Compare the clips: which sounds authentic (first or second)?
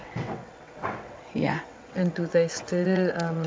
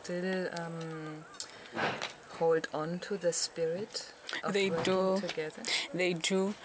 second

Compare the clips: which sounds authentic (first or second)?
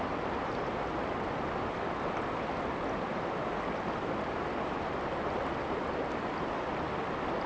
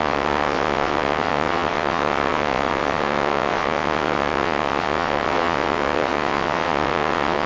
first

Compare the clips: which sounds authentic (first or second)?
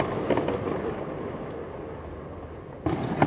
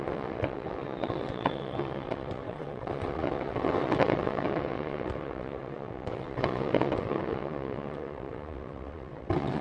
first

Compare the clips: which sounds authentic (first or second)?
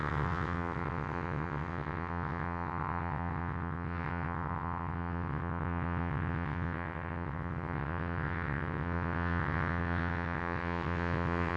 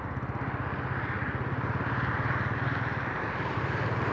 second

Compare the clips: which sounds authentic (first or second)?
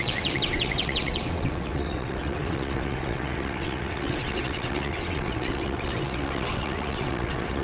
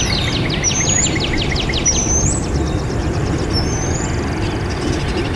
second